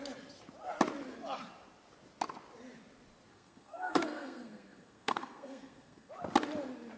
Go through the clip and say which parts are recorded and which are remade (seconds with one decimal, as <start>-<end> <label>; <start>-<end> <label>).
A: 0.0-3.3 recorded; 3.3-6.1 remade; 6.1-7.0 recorded